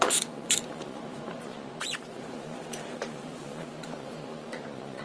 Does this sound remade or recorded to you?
remade